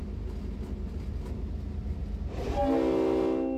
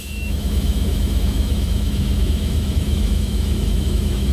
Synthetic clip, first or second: second